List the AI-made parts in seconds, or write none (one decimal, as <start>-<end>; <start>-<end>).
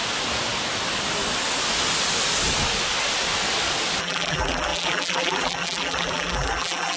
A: 4.0-7.0